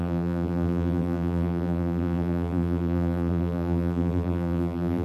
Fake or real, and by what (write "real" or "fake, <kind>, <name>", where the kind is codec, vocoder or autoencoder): fake, vocoder, BigVGAN v2